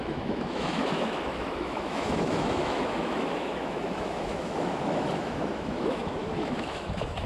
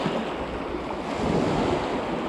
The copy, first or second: first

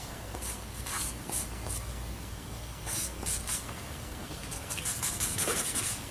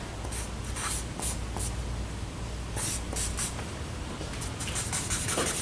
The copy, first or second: first